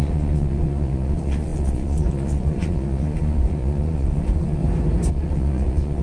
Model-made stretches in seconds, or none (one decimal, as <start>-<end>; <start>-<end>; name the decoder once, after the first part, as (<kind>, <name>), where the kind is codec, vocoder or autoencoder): 0.0-4.6 (vocoder, Vocos); 5.1-6.0